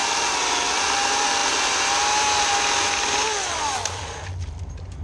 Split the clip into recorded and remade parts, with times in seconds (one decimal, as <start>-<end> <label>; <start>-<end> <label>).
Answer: 0.0-5.0 recorded